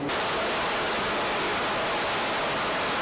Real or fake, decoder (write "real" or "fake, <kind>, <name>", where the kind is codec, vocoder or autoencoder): real